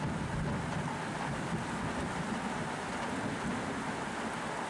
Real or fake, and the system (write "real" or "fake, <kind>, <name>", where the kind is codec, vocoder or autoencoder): real